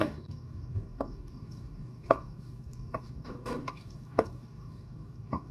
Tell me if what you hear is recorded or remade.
remade